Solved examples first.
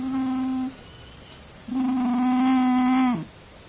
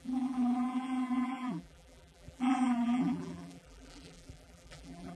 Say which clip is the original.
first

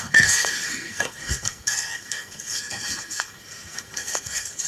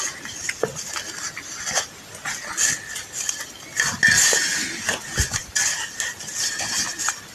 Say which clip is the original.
second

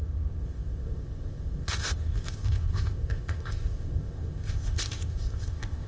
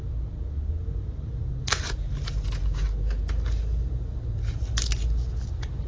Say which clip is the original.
second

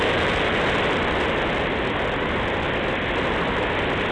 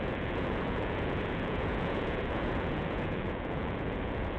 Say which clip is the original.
first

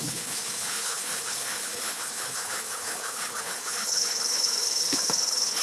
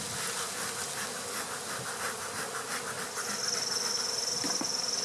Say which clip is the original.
second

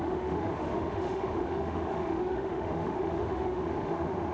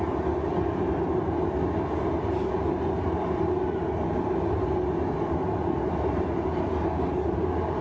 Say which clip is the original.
second